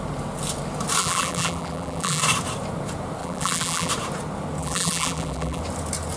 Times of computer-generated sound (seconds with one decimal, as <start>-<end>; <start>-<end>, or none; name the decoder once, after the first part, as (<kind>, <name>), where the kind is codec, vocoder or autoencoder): 1.0-2.2 (vocoder, BigVGAN v2); 3.2-3.9; 4.6-5.6